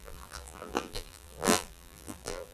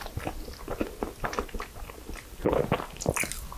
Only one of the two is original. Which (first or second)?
second